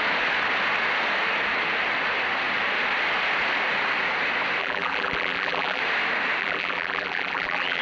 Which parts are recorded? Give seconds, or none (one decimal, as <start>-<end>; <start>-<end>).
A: 0.0-4.6; 5.8-6.4